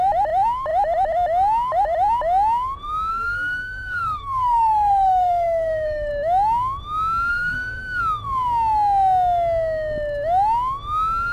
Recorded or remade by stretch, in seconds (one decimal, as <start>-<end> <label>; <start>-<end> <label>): 0.0-3.1 recorded; 3.1-6.1 remade; 6.1-7.3 recorded; 7.3-8.0 remade; 8.0-11.3 recorded